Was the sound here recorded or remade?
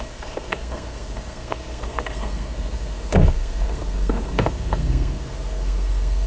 remade